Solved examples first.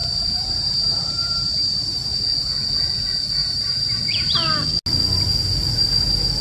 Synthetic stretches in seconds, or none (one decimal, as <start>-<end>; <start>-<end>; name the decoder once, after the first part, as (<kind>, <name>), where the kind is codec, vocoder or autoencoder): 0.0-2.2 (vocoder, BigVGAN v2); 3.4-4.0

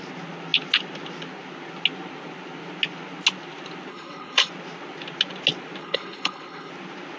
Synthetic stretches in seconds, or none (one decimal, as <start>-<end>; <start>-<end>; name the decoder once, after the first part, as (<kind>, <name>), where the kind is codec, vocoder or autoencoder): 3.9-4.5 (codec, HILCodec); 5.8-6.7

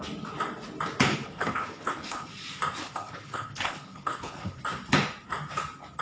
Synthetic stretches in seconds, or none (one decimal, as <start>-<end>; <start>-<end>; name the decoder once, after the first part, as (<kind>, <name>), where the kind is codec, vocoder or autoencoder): 1.1-2.3 (codec, HILCodec); 2.8-4.6